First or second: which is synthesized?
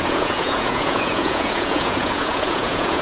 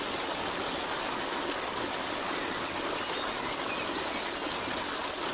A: first